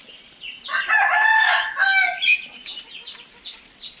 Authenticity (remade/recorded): recorded